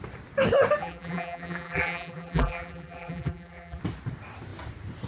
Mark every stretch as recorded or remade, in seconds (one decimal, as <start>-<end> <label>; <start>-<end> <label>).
0.0-0.8 recorded; 0.8-3.8 remade; 3.8-5.1 recorded